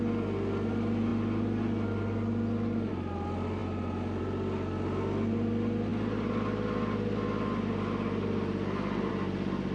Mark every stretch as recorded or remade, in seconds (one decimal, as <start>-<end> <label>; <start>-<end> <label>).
0.0-9.7 recorded